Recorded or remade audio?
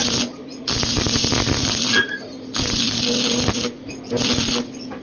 recorded